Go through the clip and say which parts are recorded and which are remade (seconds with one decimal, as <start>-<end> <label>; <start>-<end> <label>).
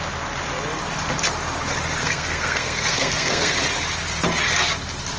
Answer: 0.0-2.0 recorded; 2.0-3.5 remade; 3.5-5.2 recorded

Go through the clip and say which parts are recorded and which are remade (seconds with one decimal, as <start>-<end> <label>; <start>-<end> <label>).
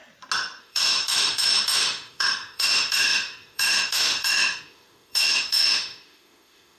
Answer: 0.0-0.6 recorded; 0.6-6.8 remade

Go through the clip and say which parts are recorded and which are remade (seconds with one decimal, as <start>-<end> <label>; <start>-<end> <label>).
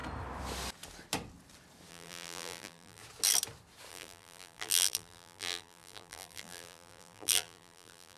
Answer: 0.0-1.9 recorded; 1.9-3.0 remade; 3.0-3.9 recorded; 3.9-8.2 remade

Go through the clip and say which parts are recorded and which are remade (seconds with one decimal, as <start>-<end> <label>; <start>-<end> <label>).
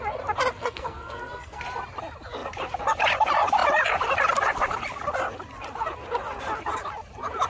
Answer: 0.0-0.6 recorded; 0.6-1.6 remade; 1.6-7.5 recorded